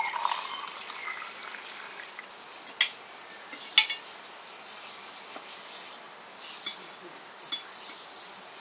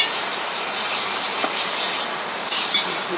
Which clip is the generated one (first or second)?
second